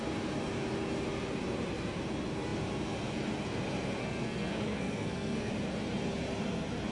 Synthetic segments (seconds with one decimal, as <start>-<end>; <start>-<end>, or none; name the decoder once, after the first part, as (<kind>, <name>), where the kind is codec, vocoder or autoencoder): 4.0-5.5 (codec, SNAC)